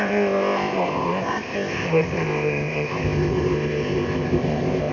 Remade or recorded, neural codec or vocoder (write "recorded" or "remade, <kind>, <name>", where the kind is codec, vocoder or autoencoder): remade, codec, ZipCodec